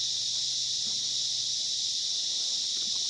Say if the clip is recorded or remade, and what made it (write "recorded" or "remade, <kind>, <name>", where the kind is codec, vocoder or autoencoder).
recorded